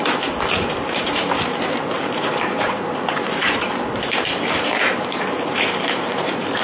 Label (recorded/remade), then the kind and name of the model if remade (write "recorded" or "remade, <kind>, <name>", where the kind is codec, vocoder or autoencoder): remade, vocoder, BigVGAN v2